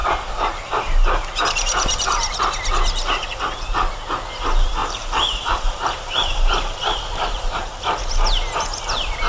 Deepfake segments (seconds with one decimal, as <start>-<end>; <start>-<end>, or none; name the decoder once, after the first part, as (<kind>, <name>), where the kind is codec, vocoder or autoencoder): 0.0-2.4 (vocoder, BigVGAN v2); 4.8-7.7